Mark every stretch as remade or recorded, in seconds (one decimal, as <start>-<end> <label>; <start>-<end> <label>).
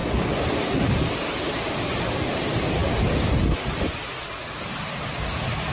0.0-5.7 recorded